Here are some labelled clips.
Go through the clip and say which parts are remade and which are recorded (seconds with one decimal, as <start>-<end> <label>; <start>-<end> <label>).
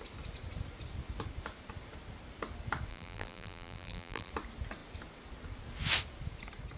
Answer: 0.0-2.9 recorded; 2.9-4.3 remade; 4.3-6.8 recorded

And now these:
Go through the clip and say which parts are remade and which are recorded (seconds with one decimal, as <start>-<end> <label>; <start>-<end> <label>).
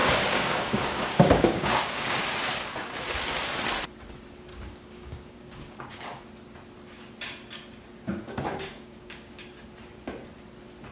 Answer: 0.0-2.2 remade; 2.2-4.5 recorded; 4.5-6.2 remade; 6.2-8.1 recorded; 8.1-9.5 remade; 9.5-10.9 recorded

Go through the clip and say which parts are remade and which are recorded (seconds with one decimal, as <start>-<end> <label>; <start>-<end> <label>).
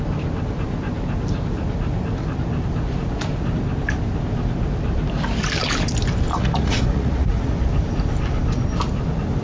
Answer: 0.0-6.3 recorded; 6.3-7.5 remade; 7.5-9.4 recorded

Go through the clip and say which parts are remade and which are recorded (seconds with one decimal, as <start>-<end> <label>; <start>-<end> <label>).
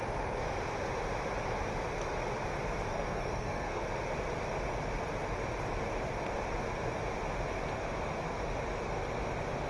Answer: 0.0-2.9 recorded; 2.9-3.8 remade; 3.8-9.7 recorded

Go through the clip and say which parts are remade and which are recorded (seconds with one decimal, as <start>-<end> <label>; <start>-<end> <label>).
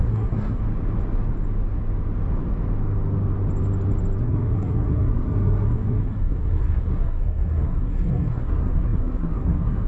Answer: 0.0-0.6 remade; 0.6-4.2 recorded; 4.2-9.9 remade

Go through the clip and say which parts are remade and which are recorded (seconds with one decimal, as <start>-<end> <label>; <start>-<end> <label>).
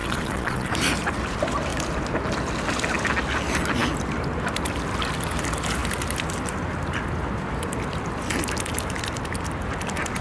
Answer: 0.0-0.7 remade; 0.7-10.2 recorded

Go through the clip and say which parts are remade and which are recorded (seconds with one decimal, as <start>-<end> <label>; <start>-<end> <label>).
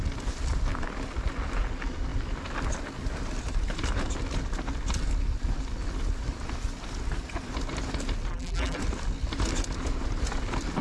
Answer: 0.0-8.3 recorded; 8.3-8.8 remade; 8.8-10.8 recorded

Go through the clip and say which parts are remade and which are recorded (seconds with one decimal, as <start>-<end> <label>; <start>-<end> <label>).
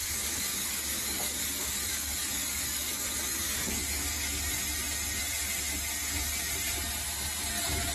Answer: 0.0-4.5 remade; 4.5-7.9 recorded